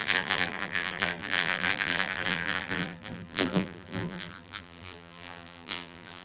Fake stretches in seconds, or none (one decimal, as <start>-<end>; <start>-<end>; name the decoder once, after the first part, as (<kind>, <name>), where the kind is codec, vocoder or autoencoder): 0.0-6.2 (vocoder, BigVGAN v2)